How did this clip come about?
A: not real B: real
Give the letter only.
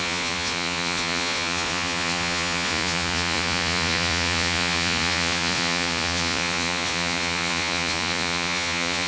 A